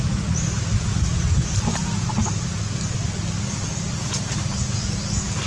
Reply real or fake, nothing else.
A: real